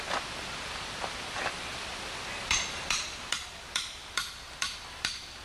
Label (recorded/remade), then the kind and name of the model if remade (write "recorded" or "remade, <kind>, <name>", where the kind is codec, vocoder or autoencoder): remade, vocoder, BigVGAN v2